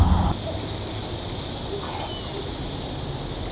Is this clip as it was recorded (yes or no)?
yes